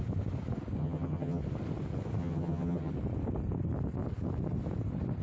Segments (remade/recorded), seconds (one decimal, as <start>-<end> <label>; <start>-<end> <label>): 0.0-0.8 recorded; 0.8-1.4 remade; 1.4-2.2 recorded; 2.2-2.9 remade; 2.9-5.2 recorded